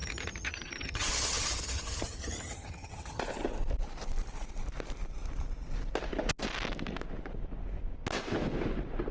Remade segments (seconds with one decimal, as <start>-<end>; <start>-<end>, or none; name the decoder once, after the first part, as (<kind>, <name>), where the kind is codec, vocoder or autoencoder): 0.0-3.2 (vocoder, HiFi-GAN)